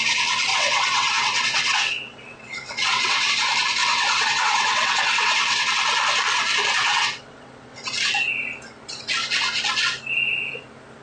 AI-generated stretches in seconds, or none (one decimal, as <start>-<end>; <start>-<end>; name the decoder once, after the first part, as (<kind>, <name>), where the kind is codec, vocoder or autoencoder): 0.5-3.3 (vocoder, WaveNeXt); 3.8-5.7; 6.8-7.8